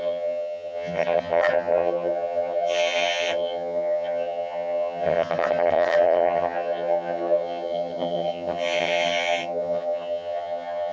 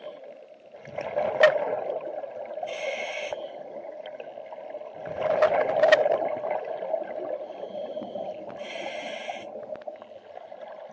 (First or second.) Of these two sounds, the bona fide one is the second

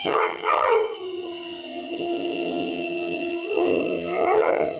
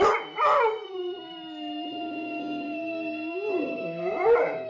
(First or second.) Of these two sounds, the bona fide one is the second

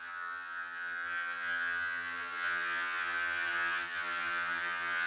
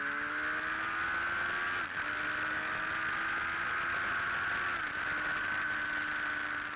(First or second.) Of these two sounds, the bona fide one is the second